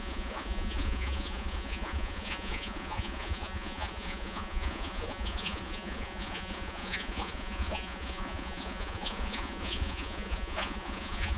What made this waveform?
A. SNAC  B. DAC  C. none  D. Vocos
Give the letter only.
D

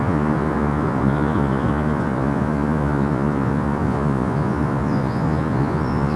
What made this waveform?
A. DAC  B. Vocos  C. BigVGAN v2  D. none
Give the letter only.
B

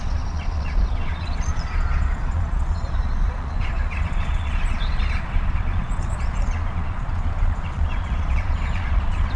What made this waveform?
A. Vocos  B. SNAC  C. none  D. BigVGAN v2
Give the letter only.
A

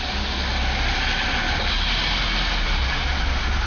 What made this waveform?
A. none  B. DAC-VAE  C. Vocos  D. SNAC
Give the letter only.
A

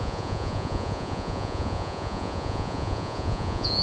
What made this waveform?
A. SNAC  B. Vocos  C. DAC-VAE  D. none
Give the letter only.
B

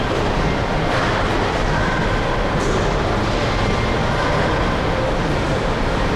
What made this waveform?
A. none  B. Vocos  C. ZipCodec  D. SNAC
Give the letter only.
A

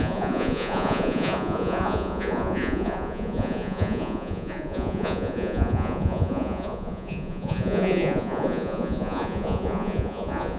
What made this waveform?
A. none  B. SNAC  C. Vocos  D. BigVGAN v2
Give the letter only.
C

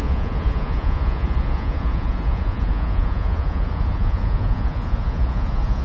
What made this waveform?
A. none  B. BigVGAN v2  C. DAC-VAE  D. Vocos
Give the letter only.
D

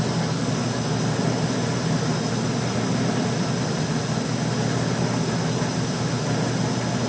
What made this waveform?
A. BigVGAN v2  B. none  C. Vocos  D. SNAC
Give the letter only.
B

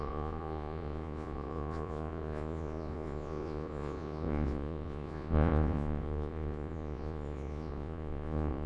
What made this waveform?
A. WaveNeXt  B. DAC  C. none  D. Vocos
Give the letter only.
D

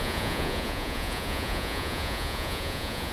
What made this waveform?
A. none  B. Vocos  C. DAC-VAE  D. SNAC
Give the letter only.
B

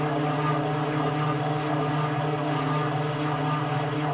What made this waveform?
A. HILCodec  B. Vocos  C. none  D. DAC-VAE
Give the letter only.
C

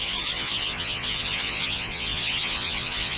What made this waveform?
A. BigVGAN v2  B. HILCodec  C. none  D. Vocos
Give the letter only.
D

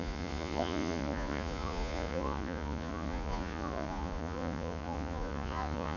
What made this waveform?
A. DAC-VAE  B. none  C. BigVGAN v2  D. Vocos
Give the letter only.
D